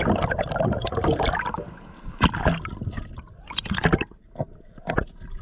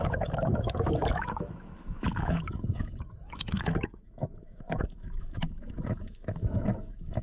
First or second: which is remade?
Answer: second